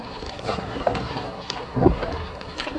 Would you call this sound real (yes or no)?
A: no